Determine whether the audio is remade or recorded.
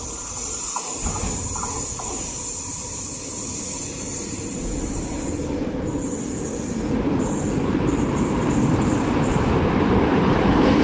remade